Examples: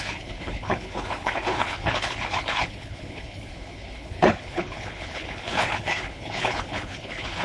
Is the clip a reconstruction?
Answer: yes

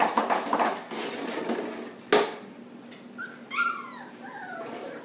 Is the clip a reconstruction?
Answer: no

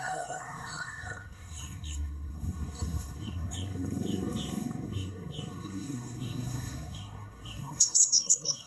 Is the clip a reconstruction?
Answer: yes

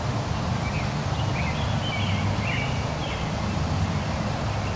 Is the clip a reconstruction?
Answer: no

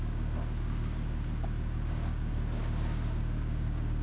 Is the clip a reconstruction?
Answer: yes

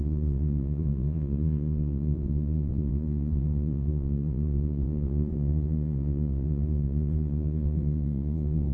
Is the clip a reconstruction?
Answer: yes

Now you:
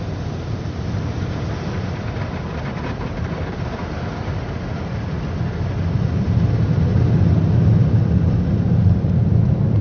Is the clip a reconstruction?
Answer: no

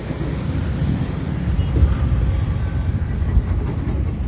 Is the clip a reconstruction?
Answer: no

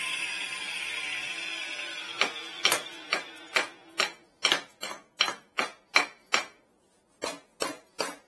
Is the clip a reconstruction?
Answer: no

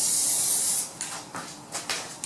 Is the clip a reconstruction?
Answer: no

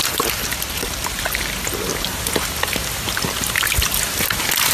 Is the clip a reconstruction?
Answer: no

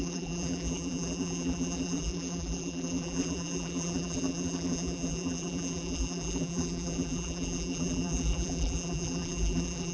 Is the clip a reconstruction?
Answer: yes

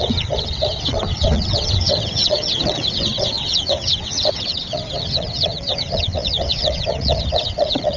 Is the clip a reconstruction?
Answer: yes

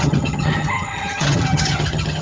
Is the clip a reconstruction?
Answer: yes